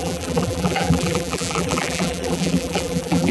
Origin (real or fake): fake